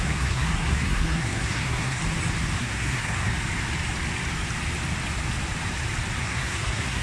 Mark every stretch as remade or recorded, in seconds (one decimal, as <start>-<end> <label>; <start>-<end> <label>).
0.0-2.0 remade; 2.0-2.6 recorded; 2.6-3.3 remade; 3.3-6.2 recorded; 6.2-7.0 remade